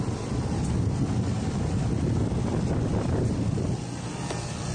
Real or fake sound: real